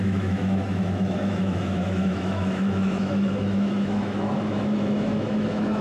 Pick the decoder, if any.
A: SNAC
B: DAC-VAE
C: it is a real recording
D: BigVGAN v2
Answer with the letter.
B